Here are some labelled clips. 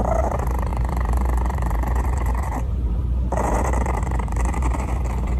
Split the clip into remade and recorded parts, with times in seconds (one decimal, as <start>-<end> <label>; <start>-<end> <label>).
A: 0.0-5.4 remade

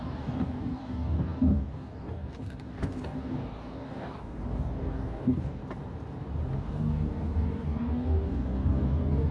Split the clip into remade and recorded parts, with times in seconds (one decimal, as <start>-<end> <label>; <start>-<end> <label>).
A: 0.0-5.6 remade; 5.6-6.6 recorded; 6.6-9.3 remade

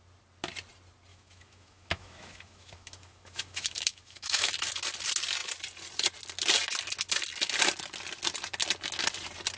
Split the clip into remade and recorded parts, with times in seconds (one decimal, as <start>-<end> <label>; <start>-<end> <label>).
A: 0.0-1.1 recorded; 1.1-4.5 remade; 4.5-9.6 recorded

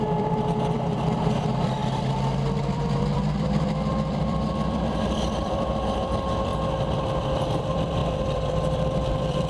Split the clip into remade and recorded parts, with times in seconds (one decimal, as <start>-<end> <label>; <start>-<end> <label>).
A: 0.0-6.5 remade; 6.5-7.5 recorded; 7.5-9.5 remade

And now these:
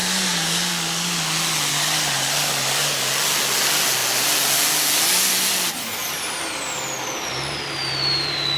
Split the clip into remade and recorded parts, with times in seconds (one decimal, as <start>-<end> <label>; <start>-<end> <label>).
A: 0.0-1.2 remade; 1.2-1.7 recorded; 1.7-3.1 remade; 3.1-8.6 recorded

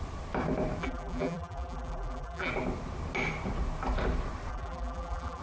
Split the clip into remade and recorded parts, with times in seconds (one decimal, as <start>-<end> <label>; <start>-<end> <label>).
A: 0.0-0.8 recorded; 0.8-2.5 remade; 2.5-4.5 recorded; 4.5-5.4 remade